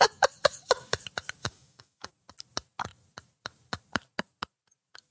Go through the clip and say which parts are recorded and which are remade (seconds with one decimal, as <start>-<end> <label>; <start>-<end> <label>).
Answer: 0.0-1.4 recorded; 1.4-2.1 remade; 2.1-5.1 recorded